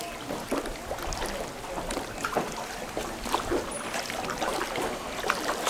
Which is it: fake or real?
real